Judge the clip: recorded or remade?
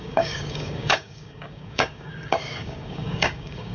remade